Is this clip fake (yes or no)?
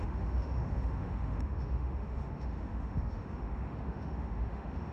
yes